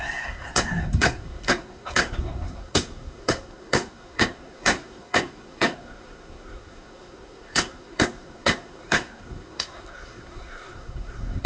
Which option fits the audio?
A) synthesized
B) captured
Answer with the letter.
A